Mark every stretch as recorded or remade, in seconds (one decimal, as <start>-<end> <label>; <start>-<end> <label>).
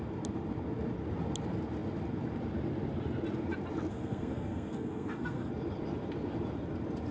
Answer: 0.0-3.9 recorded; 3.9-5.5 remade; 5.5-7.1 recorded